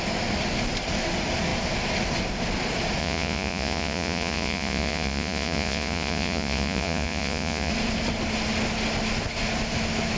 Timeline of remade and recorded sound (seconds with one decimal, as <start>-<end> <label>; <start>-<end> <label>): 0.0-3.0 recorded; 3.0-7.7 remade; 7.7-10.2 recorded